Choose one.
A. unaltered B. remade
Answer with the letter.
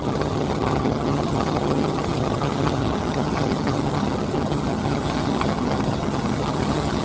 B